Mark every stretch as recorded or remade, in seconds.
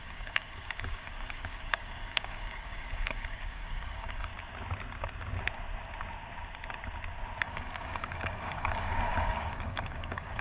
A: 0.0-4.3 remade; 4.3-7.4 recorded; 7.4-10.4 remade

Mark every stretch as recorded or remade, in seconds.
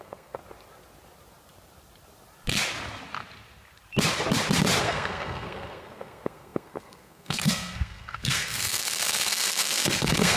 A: 0.0-0.4 remade; 0.4-4.8 recorded; 4.8-10.4 remade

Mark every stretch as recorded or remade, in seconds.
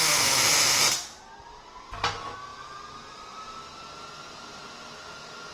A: 0.0-5.5 recorded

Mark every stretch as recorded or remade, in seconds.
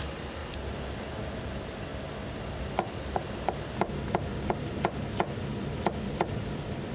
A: 0.0-0.4 remade; 0.4-1.3 recorded; 1.3-1.9 remade; 1.9-5.5 recorded; 5.5-6.9 remade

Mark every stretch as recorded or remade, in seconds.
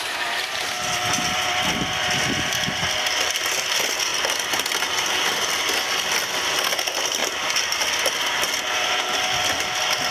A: 0.0-10.1 recorded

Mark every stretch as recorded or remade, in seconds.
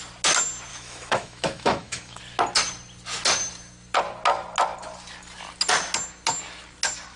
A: 0.0-0.7 recorded; 0.7-2.2 remade; 2.2-7.2 recorded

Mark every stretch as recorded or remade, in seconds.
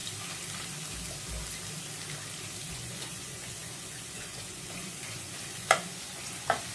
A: 0.0-2.7 recorded; 2.7-6.7 remade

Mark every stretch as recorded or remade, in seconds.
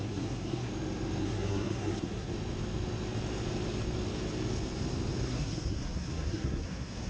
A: 0.0-0.7 remade; 0.7-1.2 recorded; 1.2-2.3 remade; 2.3-5.3 recorded; 5.3-7.1 remade